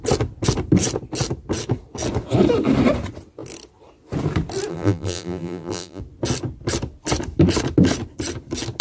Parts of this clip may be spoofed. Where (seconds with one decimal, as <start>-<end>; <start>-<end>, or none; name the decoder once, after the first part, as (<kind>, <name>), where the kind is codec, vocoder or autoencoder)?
4.7-6.0 (vocoder, BigVGAN v2)